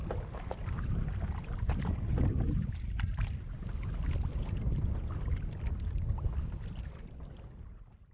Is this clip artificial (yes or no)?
no